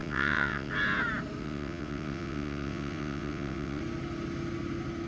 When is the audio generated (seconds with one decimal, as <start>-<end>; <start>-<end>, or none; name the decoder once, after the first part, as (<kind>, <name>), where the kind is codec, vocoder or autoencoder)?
0.0-0.7 (vocoder, WaveNeXt); 1.4-3.8